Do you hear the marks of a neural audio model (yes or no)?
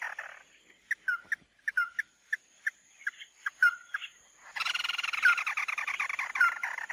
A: no